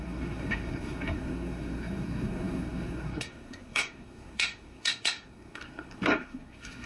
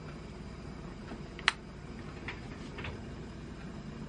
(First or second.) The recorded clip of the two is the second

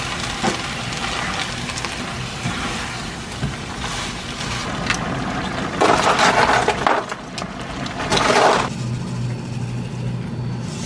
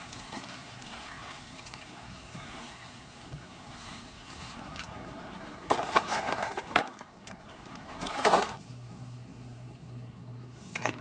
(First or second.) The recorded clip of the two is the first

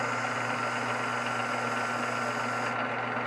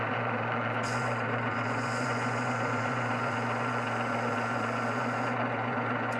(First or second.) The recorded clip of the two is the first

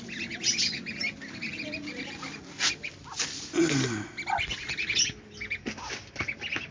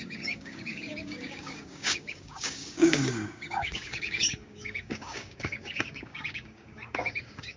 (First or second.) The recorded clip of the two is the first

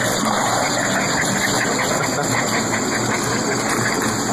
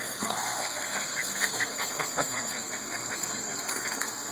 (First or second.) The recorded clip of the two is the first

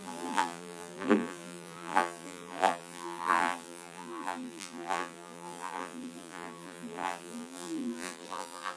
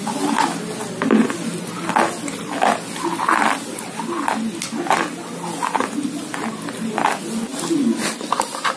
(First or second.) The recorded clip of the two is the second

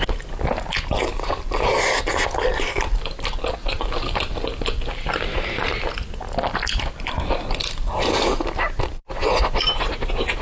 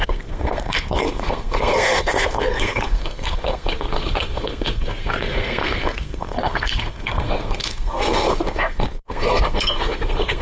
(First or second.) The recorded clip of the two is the first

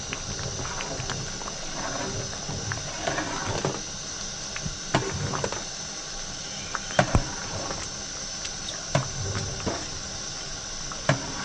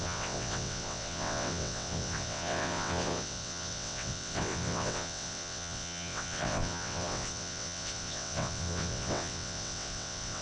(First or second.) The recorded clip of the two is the first